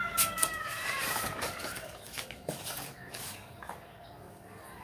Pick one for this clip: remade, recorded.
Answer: remade